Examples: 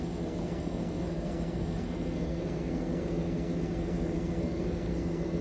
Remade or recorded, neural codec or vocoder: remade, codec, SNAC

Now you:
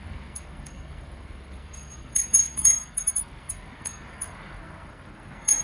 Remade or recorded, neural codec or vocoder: remade, codec, SNAC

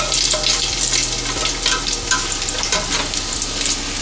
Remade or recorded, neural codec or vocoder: recorded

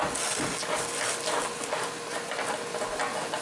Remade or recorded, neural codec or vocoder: recorded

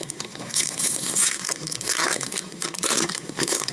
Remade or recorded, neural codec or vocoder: remade, codec, SNAC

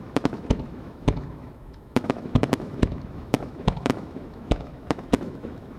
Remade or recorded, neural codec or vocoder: remade, autoencoder, DAC-VAE